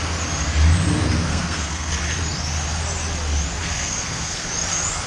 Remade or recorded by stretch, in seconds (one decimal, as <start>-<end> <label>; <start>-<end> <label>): 0.0-1.3 recorded; 1.3-1.9 remade; 1.9-3.6 recorded; 3.6-4.5 remade; 4.5-5.1 recorded